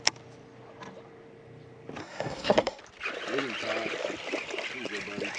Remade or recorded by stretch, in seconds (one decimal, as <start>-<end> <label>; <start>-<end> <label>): 0.0-2.0 recorded; 2.0-2.8 remade; 2.8-5.4 recorded